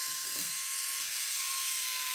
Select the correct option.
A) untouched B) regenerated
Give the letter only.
B